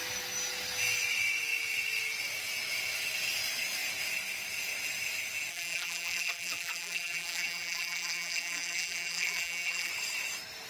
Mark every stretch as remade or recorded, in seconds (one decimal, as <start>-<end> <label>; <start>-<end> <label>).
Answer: 0.0-5.5 recorded; 5.5-9.9 remade; 9.9-10.7 recorded